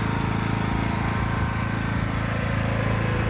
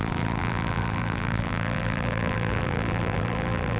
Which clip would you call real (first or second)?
first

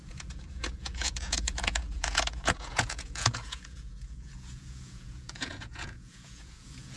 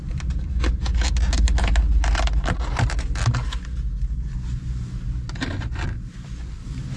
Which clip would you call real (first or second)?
second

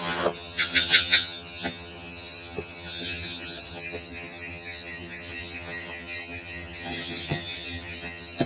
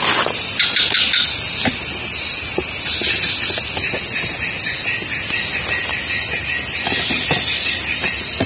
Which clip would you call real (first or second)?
second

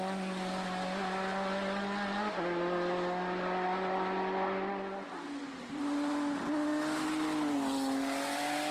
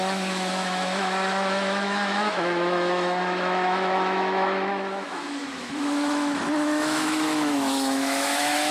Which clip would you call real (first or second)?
first